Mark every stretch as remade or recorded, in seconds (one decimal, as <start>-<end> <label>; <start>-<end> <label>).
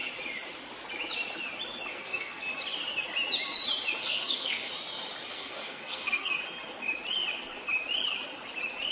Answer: 0.0-1.9 recorded; 1.9-2.4 remade; 2.4-4.0 recorded; 4.0-4.7 remade; 4.7-5.3 recorded; 5.3-6.3 remade; 6.3-8.9 recorded